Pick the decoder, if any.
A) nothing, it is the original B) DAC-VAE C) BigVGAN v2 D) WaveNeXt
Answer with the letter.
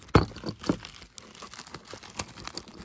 A